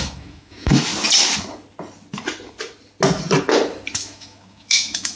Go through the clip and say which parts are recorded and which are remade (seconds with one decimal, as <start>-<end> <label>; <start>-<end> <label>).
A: 0.0-0.9 remade; 0.9-3.9 recorded; 3.9-5.2 remade